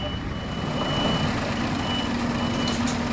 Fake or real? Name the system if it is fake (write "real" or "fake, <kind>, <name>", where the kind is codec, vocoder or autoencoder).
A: real